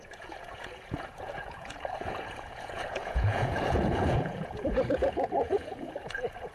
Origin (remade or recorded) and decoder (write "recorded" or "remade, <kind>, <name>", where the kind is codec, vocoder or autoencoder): remade, vocoder, Vocos